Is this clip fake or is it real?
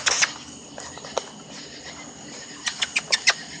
real